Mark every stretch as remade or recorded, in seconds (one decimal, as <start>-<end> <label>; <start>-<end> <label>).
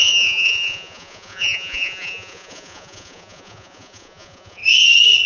0.0-4.6 remade; 4.6-5.3 recorded